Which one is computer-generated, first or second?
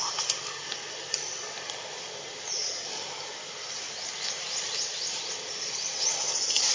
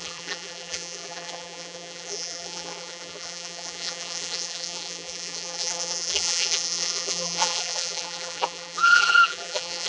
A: second